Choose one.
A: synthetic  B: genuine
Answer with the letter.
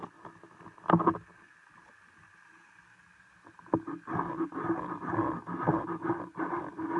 B